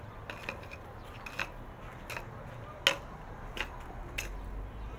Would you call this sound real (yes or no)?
yes